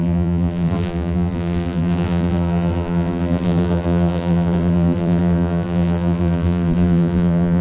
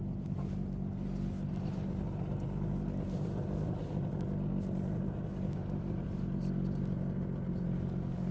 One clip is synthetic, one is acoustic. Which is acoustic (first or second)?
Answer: second